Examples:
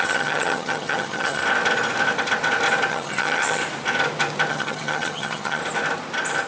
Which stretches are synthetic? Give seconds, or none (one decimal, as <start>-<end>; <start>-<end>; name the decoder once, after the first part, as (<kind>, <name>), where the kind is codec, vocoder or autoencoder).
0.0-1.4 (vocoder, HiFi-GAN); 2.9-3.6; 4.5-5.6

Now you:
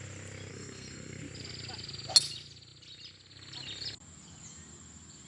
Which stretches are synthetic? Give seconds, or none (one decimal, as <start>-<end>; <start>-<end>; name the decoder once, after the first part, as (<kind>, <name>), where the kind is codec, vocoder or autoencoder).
0.5-1.2 (codec, SNAC)

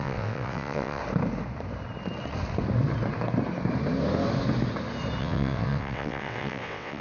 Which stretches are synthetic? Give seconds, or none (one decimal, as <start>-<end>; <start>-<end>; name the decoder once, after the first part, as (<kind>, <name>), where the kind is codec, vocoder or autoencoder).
0.0-1.0 (vocoder, WaveNeXt); 5.2-7.0